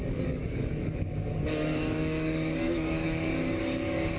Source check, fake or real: fake